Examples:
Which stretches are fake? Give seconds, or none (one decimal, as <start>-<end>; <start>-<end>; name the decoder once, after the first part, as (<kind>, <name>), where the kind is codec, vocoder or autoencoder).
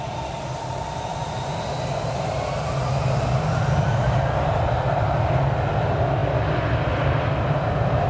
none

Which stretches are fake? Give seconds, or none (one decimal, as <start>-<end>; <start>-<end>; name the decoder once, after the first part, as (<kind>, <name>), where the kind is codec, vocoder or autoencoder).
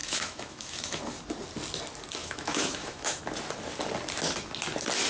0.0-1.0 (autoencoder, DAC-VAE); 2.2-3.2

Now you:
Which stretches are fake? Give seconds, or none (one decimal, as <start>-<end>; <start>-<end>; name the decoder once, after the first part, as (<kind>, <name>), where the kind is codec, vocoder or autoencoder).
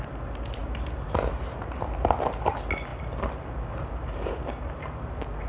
none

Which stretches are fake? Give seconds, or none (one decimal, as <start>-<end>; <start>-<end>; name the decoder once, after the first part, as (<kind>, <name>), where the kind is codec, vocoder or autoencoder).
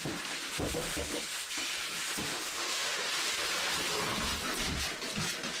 0.9-1.5 (autoencoder, DAC-VAE); 2.3-3.1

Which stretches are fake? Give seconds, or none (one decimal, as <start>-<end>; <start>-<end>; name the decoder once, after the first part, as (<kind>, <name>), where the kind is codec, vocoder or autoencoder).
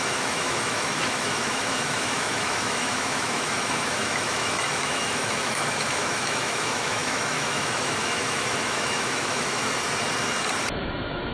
0.0-9.6 (autoencoder, DAC-VAE); 10.7-11.3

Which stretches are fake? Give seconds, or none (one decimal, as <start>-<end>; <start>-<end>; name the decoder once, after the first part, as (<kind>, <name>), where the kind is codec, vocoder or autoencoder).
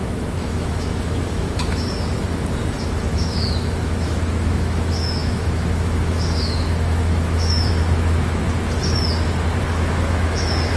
0.0-8.4 (autoencoder, DAC-VAE); 9.6-10.8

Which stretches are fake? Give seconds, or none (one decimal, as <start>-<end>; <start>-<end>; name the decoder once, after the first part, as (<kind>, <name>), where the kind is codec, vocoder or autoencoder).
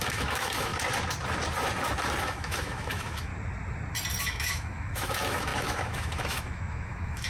0.0-0.7 (autoencoder, DAC-VAE); 2.2-3.3; 4.2-7.3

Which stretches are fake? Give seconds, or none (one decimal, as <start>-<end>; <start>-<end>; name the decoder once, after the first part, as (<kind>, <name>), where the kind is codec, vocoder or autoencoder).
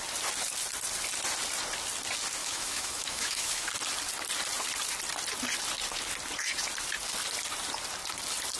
2.4-3.7 (autoencoder, DAC-VAE)